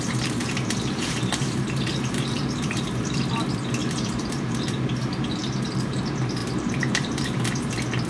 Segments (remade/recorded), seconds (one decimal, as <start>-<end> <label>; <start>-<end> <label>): 0.0-0.4 recorded; 0.4-3.2 remade; 3.2-3.8 recorded; 3.8-4.7 remade; 4.7-5.4 recorded; 5.4-6.0 remade; 6.0-6.4 recorded; 6.4-7.5 remade; 7.5-8.1 recorded